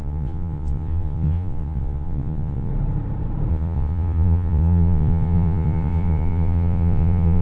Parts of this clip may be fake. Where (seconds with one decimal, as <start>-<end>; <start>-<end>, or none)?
0.0-2.7; 3.5-7.4